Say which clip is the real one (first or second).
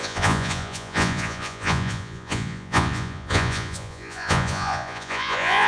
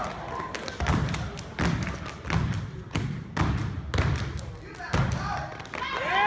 second